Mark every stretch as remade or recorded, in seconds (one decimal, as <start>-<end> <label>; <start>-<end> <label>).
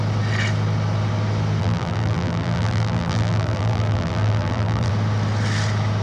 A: 0.0-1.6 recorded; 1.6-4.9 remade; 4.9-6.0 recorded